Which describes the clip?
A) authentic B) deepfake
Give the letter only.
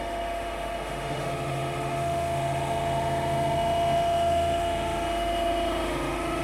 B